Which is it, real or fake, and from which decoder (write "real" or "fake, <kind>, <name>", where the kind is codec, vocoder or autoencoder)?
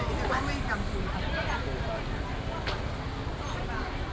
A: real